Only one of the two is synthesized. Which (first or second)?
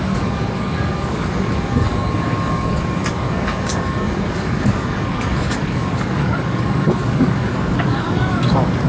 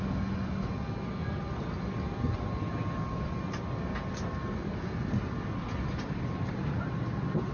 first